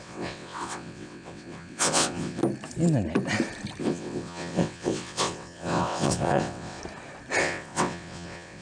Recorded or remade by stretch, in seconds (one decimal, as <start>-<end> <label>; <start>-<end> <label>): 0.0-2.4 remade; 2.4-3.8 recorded; 3.8-6.8 remade; 6.8-7.4 recorded; 7.4-8.6 remade